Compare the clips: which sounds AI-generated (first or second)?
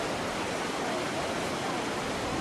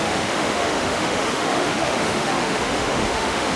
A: second